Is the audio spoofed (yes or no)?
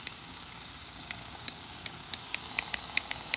yes